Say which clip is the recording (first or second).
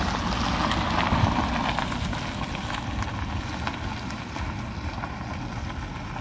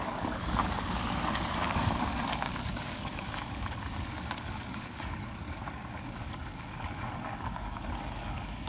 first